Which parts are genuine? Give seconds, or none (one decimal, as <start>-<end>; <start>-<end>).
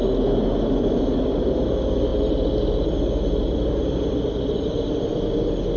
0.0-5.8